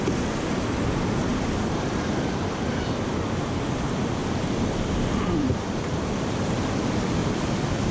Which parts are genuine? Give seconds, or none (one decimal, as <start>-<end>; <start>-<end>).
0.0-1.3; 3.4-4.2; 6.4-7.2